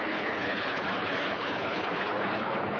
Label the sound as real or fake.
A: fake